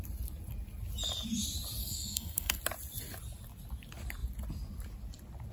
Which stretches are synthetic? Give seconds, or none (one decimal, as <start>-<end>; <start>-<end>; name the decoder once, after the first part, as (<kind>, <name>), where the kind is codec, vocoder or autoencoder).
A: 1.8-2.6 (codec, SNAC)